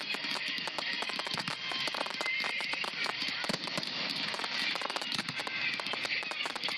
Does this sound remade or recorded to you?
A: remade